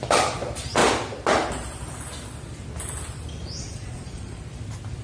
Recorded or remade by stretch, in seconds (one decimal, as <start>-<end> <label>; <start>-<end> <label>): 0.0-3.6 recorded; 3.6-4.4 remade; 4.4-5.0 recorded